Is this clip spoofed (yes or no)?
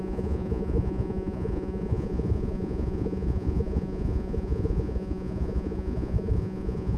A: yes